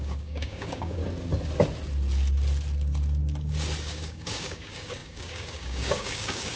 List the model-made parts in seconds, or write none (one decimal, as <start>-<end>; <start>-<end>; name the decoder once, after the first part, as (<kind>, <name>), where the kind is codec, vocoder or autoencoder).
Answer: 0.0-1.0 (codec, DAC); 3.8-6.6